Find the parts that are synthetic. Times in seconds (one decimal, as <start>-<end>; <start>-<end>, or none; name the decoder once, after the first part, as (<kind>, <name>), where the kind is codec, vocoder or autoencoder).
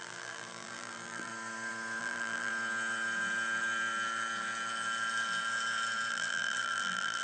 0.0-1.3 (vocoder, BigVGAN v2); 2.0-2.5; 6.1-7.2